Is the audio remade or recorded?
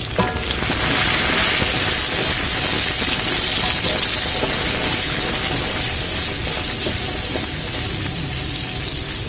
recorded